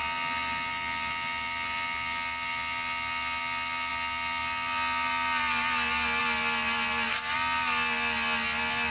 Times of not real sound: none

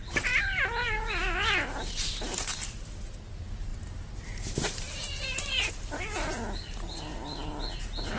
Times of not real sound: none

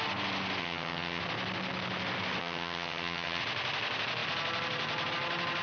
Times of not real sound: 0.6-1.2 (vocoder, HiFi-GAN); 2.4-3.4

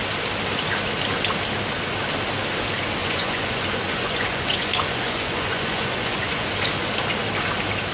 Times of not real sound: 3.0-6.5 (vocoder, Vocos)

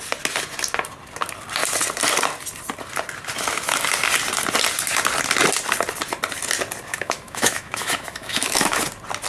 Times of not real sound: 6.9-8.8 (autoencoder, DAC-VAE)

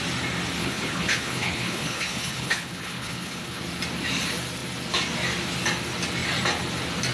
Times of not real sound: 0.6-3.6 (codec, HILCodec)